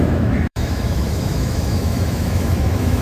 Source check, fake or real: fake